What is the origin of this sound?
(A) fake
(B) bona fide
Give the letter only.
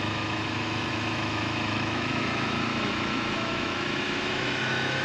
A